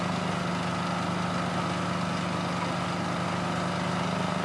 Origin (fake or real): real